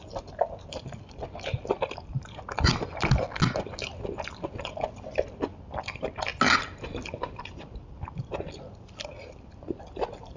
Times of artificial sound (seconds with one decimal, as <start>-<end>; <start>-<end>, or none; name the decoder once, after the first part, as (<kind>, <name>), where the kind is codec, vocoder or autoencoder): none